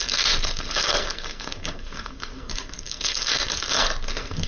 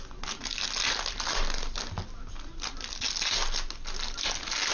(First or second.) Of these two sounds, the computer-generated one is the first